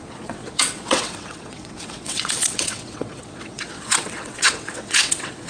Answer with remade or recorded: remade